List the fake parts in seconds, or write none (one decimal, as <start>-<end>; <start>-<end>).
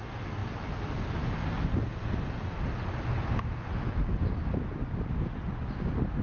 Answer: none